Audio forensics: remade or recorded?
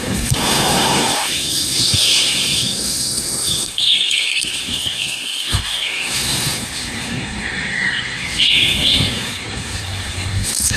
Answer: remade